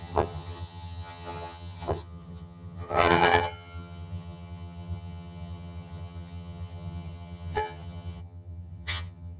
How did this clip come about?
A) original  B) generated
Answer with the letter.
B